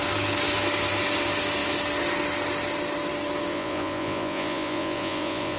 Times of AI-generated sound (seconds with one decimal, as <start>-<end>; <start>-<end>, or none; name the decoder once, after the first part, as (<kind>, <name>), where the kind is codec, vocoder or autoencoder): 3.5-5.6 (vocoder, Vocos)